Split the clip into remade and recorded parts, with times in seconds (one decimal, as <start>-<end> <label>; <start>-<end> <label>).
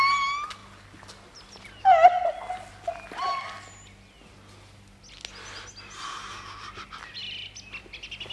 0.0-8.3 recorded